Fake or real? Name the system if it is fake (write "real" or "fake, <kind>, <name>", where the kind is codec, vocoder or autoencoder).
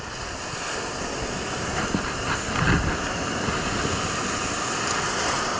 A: real